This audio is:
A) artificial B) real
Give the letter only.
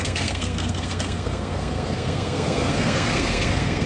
A